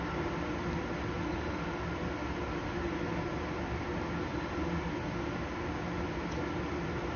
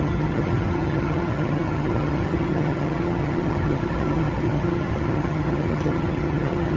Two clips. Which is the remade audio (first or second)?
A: second